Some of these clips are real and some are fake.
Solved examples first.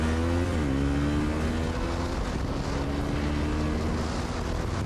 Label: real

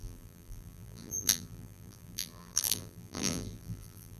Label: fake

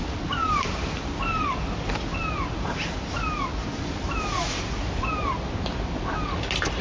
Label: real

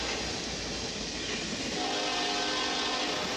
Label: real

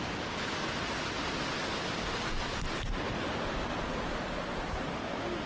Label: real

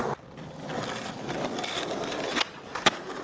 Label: real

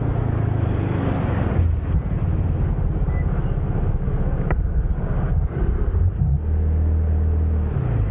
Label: real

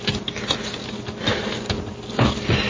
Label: real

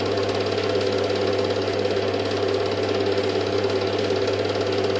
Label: real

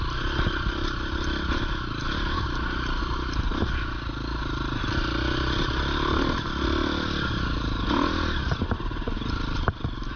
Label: real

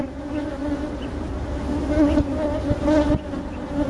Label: real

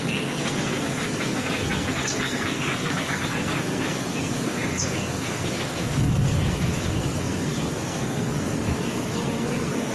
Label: fake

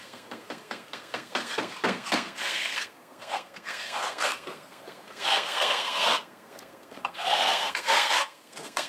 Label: fake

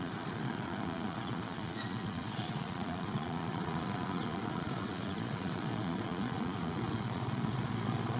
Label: fake